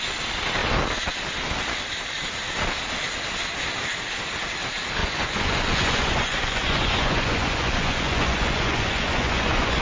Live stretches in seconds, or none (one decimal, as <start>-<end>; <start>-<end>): 0.0-5.0